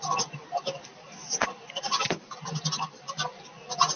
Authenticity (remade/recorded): recorded